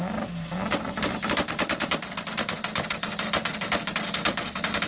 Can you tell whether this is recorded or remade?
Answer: recorded